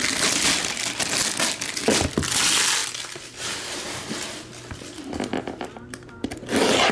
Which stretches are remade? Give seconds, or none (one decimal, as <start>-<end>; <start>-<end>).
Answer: none